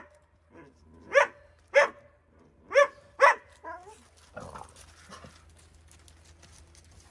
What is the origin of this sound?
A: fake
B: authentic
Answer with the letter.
B